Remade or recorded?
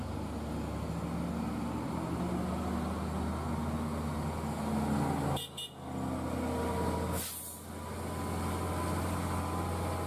recorded